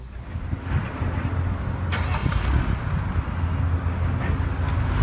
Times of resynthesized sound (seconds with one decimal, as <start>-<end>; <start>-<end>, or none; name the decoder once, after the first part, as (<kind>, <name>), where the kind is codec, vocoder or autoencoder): none